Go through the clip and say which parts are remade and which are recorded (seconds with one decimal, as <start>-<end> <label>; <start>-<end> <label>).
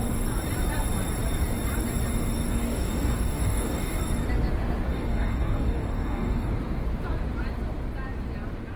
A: 0.0-2.6 recorded; 2.6-4.0 remade; 4.0-4.9 recorded; 4.9-6.5 remade; 6.5-8.8 recorded